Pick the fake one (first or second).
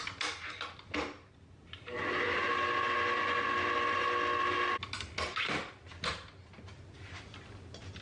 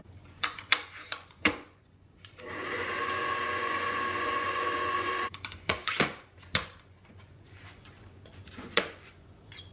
second